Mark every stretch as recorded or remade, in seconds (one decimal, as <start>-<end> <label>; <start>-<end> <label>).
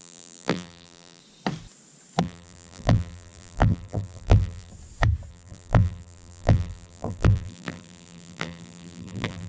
0.0-1.2 remade; 1.2-2.2 recorded; 2.2-4.7 remade; 4.7-5.3 recorded; 5.3-9.5 remade